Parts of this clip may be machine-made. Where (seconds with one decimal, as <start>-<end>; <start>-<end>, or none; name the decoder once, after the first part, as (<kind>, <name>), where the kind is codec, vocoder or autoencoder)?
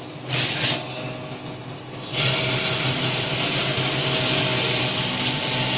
none